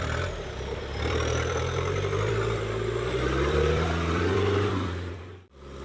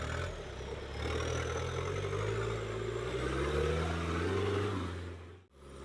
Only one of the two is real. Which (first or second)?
second